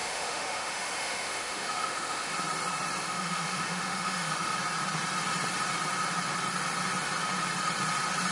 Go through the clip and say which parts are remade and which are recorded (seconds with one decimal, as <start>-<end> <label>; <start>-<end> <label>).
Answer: 0.0-2.3 remade; 2.3-3.0 recorded; 3.0-4.5 remade; 4.5-8.3 recorded